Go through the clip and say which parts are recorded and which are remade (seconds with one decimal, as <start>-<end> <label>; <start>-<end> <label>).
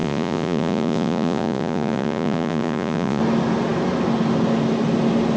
0.0-3.2 remade; 3.2-5.4 recorded